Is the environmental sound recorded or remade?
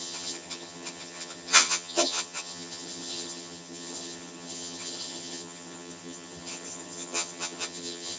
remade